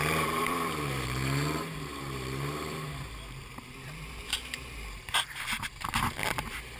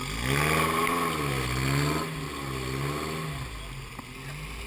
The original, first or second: second